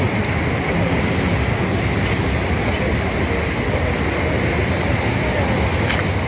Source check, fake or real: real